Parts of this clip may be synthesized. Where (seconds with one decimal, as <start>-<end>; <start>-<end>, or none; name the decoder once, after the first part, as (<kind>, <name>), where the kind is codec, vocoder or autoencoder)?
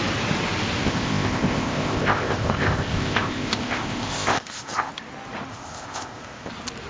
0.8-4.9 (codec, ZipCodec); 5.5-6.5